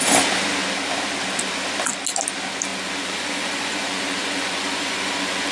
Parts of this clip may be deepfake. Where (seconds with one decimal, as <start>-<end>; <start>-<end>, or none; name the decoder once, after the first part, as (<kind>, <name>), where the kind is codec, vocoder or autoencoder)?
2.7-5.5 (vocoder, Vocos)